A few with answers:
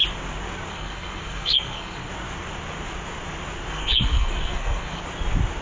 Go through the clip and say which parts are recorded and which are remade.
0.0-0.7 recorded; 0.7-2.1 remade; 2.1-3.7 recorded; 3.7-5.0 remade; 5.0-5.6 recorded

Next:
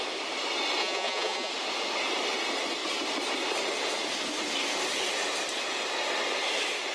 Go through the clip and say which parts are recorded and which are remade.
0.0-0.8 recorded; 0.8-1.5 remade; 1.5-6.9 recorded

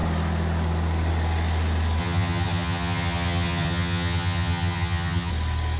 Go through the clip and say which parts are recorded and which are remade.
0.0-2.0 recorded; 2.0-5.3 remade; 5.3-5.8 recorded

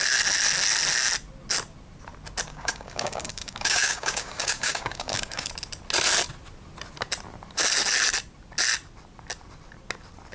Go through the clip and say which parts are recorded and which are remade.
0.0-2.5 recorded; 2.5-5.5 remade; 5.5-10.3 recorded

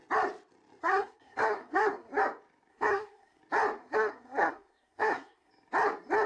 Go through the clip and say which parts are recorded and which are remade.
0.0-0.8 recorded; 0.8-2.1 remade; 2.1-2.7 recorded; 2.7-3.4 remade; 3.4-3.8 recorded; 3.8-5.5 remade; 5.5-6.3 recorded

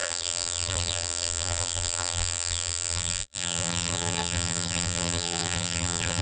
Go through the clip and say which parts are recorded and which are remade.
0.0-6.2 remade

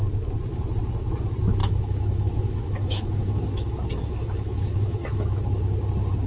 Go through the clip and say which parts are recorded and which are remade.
0.0-1.6 recorded; 1.6-5.4 remade; 5.4-6.3 recorded

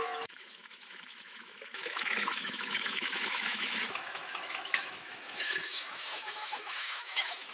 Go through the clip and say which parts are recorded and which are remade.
0.0-7.5 remade